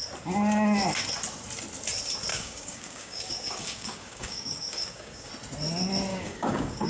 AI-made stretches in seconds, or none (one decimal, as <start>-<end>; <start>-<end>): 2.3-5.3; 6.1-6.9